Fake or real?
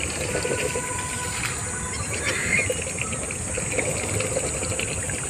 real